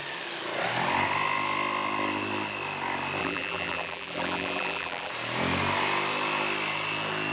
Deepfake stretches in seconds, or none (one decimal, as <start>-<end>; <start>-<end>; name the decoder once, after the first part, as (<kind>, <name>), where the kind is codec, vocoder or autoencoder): 3.2-5.1 (vocoder, BigVGAN v2)